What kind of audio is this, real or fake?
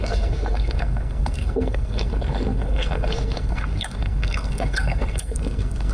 fake